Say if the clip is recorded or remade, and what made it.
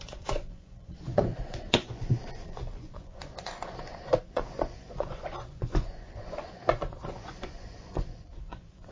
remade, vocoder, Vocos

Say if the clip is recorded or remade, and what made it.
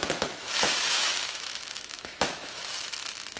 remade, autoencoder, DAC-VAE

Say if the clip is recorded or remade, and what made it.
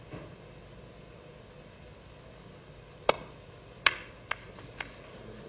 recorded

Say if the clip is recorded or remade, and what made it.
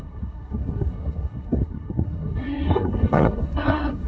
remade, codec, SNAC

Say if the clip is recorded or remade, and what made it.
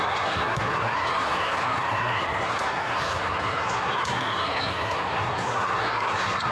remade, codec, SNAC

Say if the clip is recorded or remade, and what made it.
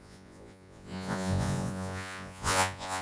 remade, vocoder, Vocos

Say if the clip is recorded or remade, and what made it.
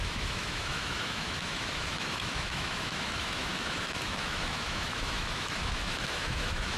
remade, autoencoder, DAC-VAE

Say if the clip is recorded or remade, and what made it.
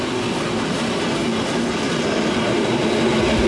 recorded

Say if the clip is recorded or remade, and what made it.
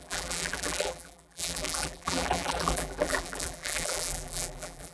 remade, vocoder, BigVGAN v2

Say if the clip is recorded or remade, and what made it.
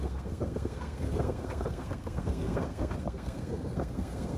remade, codec, SNAC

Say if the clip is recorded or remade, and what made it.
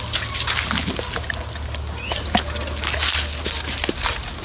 recorded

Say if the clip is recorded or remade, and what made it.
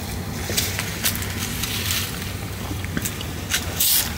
recorded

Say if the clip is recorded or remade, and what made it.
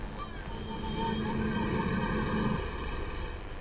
recorded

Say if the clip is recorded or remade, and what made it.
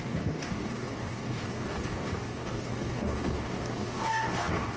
remade, codec, DAC